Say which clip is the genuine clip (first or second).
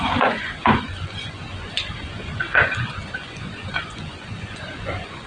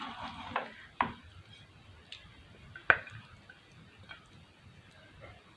second